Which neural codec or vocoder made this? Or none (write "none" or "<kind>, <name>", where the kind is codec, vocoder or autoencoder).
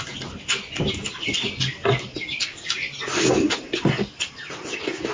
none